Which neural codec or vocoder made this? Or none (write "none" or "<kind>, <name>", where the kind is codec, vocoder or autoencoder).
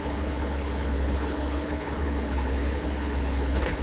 codec, HILCodec